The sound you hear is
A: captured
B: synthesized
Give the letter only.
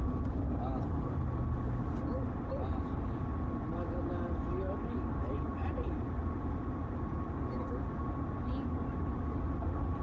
A